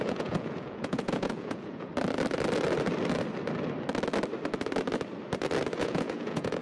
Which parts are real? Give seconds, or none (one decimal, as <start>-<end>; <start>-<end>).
1.9-5.8